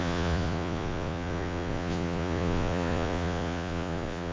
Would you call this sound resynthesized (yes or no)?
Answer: yes